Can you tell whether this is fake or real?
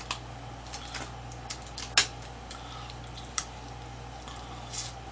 real